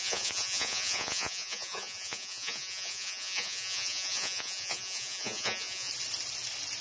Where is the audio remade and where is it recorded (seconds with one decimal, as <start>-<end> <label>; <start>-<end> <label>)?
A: 0.0-5.9 remade; 5.9-6.8 recorded